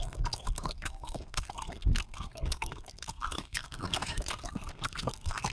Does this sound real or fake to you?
fake